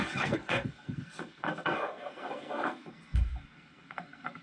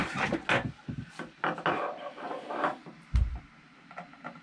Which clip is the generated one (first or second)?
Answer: first